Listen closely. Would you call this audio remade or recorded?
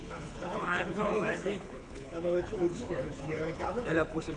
remade